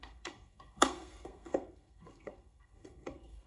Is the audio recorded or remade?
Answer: remade